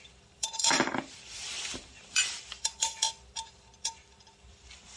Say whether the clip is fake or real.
fake